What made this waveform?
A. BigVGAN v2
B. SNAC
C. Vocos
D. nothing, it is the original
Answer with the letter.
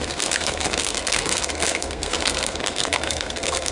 B